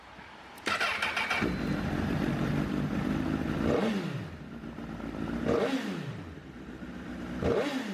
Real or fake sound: real